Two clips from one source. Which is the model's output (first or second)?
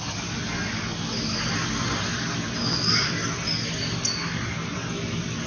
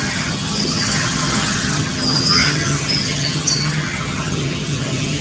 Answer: second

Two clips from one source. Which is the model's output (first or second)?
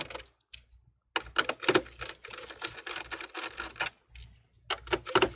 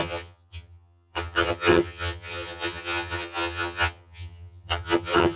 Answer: second